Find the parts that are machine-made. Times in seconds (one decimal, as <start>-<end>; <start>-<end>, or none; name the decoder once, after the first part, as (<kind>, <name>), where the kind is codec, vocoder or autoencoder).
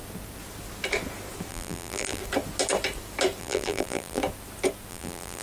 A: 1.5-2.2 (vocoder, BigVGAN v2); 3.4-4.2; 4.9-5.4